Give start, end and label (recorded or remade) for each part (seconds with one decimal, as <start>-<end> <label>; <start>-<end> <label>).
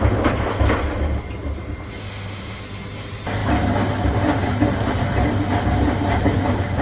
0.0-2.0 recorded; 2.0-2.6 remade; 2.6-6.8 recorded